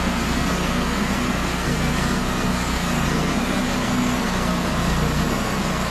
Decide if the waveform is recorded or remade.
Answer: remade